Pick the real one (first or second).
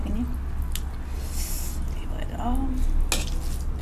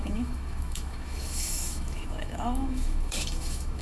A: first